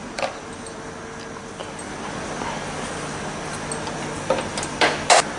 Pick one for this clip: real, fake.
real